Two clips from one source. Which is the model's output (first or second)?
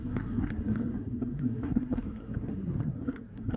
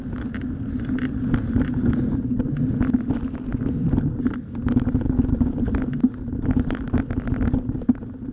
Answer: first